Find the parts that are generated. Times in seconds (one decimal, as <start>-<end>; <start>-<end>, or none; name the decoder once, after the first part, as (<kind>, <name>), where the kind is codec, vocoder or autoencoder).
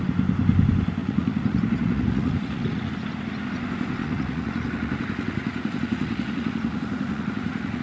1.0-2.9 (vocoder, Vocos); 4.0-7.8